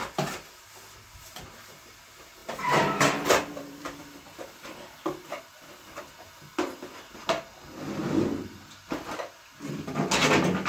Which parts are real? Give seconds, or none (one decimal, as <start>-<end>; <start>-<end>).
0.0-2.4; 6.0-10.7

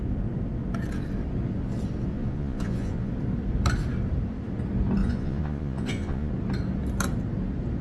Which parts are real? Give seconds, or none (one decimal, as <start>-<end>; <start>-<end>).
0.0-2.1; 3.1-5.0; 6.3-7.8